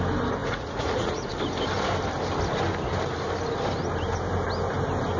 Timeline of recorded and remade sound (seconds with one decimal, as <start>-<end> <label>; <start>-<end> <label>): 0.0-0.4 recorded; 0.4-1.3 remade; 1.3-5.2 recorded

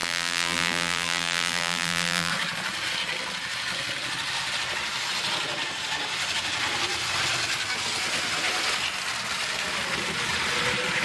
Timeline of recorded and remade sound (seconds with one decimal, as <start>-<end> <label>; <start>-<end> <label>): 0.0-2.3 remade; 2.3-11.0 recorded

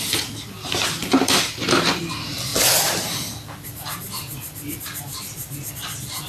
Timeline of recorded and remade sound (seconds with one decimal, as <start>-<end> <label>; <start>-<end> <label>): 0.0-1.0 recorded; 1.0-2.0 remade; 2.0-6.3 recorded

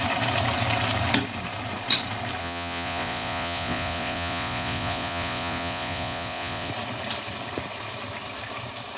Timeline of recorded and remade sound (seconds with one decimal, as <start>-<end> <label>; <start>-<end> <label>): 0.0-2.4 recorded; 2.4-6.7 remade; 6.7-9.0 recorded

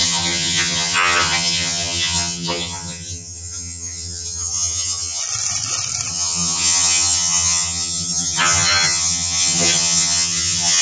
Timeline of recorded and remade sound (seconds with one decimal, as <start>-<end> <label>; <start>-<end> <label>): 0.0-5.2 remade; 5.2-6.1 recorded; 6.1-10.8 remade

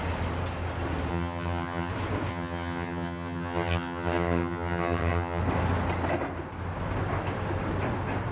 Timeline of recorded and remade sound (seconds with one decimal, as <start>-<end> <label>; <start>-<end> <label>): 0.0-1.1 recorded; 1.1-1.9 remade; 1.9-2.3 recorded; 2.3-5.4 remade; 5.4-8.3 recorded